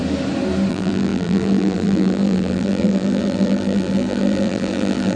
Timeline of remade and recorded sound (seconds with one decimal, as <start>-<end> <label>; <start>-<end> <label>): 0.0-0.7 recorded; 0.7-5.2 remade